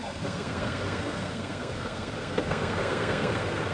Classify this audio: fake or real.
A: fake